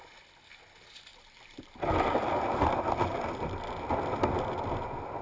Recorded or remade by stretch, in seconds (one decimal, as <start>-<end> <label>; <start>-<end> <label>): 0.0-5.2 recorded